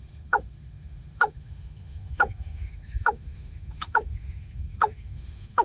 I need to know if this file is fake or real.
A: fake